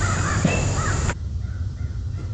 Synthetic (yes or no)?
no